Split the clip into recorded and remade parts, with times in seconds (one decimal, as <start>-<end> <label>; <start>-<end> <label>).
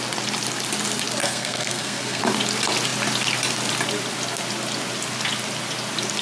0.0-1.2 recorded; 1.2-2.2 remade; 2.2-6.2 recorded